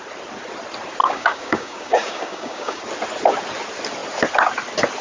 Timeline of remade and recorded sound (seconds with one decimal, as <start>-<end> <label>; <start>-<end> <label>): 0.0-1.0 recorded; 1.0-2.8 remade; 2.8-5.0 recorded